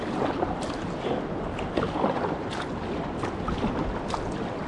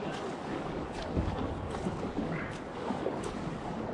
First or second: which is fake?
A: second